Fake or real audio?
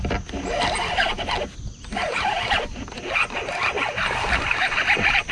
real